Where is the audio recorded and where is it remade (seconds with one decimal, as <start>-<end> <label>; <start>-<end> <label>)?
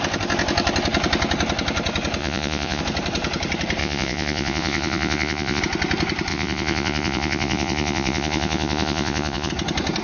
0.0-2.2 recorded; 2.2-2.8 remade; 2.8-3.8 recorded; 3.8-5.6 remade; 5.6-6.3 recorded; 6.3-9.5 remade; 9.5-10.0 recorded